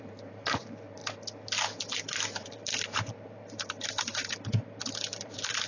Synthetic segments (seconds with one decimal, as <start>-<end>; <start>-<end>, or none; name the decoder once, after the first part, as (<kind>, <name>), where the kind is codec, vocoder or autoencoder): 0.0-1.0 (vocoder, BigVGAN v2); 1.8-5.7